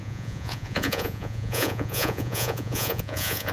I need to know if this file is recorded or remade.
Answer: remade